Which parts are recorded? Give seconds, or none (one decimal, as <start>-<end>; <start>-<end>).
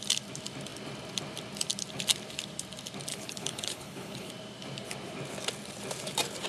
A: 0.0-3.1; 4.3-6.5